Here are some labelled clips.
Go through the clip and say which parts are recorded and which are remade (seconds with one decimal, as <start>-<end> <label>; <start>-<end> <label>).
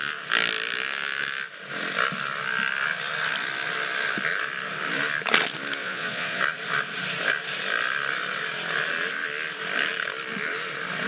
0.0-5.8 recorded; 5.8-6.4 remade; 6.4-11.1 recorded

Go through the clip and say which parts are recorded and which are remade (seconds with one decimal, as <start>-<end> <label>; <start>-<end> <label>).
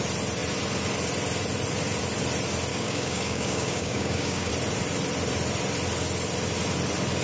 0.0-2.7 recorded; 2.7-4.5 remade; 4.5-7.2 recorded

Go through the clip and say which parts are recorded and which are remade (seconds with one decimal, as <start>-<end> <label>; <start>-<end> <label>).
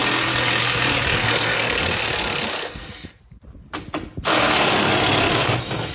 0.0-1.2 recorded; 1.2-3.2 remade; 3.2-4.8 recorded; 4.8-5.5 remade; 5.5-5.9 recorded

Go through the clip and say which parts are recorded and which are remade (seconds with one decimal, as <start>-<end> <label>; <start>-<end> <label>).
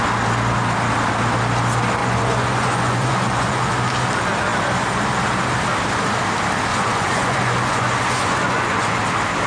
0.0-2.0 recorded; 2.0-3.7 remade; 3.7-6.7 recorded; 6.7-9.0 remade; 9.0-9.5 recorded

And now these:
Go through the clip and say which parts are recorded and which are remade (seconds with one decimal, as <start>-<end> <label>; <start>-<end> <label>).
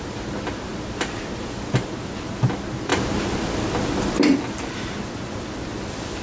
0.0-6.2 recorded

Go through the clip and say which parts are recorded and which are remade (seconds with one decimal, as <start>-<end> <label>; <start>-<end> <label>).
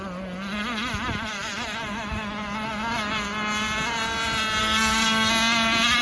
0.0-4.6 recorded; 4.6-5.3 remade; 5.3-6.0 recorded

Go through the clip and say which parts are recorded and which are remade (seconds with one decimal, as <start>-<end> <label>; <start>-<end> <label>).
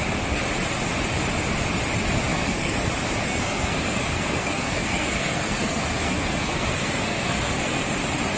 0.0-2.3 recorded; 2.3-2.9 remade; 2.9-3.3 recorded; 3.3-7.9 remade; 7.9-8.4 recorded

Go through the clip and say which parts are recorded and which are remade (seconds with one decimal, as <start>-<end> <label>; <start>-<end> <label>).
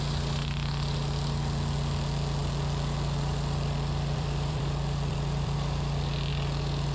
0.0-2.4 recorded; 2.4-6.3 remade; 6.3-6.9 recorded